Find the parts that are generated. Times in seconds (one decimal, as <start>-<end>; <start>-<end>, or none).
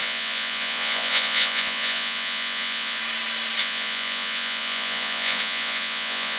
0.0-3.0; 3.6-6.4